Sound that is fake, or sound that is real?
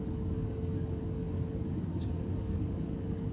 fake